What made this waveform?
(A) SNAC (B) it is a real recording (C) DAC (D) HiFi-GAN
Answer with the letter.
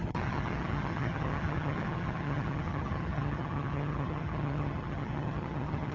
D